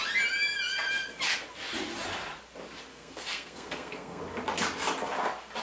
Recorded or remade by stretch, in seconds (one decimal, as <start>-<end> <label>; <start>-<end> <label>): 0.0-2.9 recorded; 2.9-4.2 remade; 4.2-5.6 recorded